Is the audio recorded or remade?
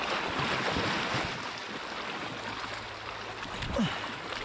recorded